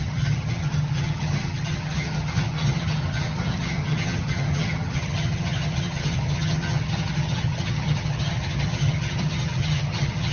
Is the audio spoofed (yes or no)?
yes